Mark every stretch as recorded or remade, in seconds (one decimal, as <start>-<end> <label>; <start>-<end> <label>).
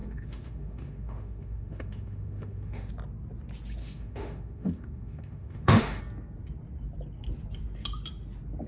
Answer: 0.0-2.9 remade; 2.9-3.8 recorded; 3.8-6.0 remade; 6.0-8.7 recorded